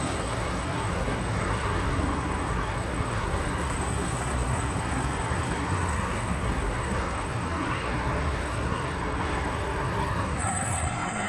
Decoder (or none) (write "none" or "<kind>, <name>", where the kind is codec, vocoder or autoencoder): codec, SNAC